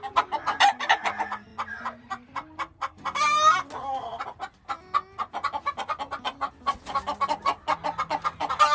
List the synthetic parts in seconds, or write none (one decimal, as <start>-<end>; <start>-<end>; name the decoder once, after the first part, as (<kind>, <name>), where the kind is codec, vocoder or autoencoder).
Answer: 1.5-2.8 (vocoder, BigVGAN v2)